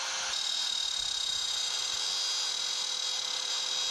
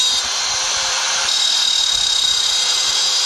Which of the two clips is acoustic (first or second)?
first